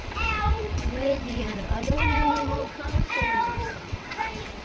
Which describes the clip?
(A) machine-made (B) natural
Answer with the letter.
A